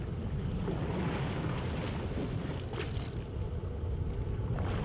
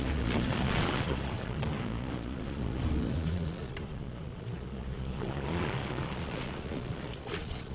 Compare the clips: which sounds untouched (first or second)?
first